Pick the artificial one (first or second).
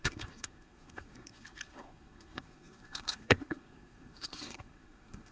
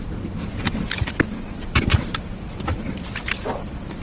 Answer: first